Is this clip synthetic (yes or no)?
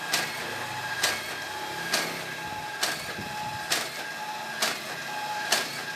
no